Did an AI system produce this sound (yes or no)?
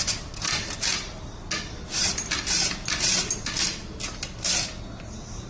no